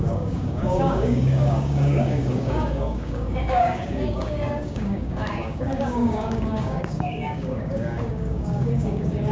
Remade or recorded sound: remade